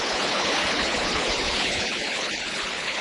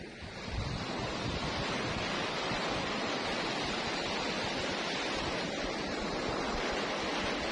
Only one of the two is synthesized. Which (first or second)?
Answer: first